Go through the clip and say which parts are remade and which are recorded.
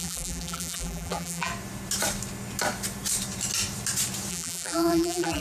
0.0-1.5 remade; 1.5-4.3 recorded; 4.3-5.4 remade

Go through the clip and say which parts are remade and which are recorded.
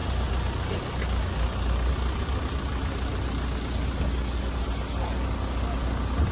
0.0-6.3 recorded